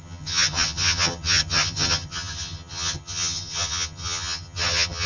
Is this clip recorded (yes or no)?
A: no